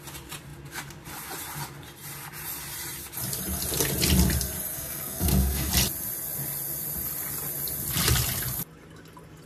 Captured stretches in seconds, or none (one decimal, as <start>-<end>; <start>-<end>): 0.0-4.7; 5.7-9.5